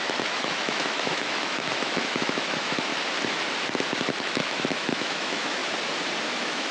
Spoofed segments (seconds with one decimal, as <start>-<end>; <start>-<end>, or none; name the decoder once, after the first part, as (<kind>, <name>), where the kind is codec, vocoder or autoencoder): 0.0-2.9 (autoencoder, DAC-VAE); 4.2-5.6; 6.2-6.7